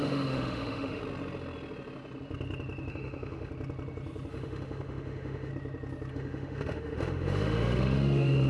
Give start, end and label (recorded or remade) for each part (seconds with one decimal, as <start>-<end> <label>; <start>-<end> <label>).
0.0-1.0 remade; 1.0-2.9 recorded; 2.9-3.5 remade; 3.5-4.3 recorded; 4.3-5.5 remade; 5.5-6.1 recorded; 6.1-8.5 remade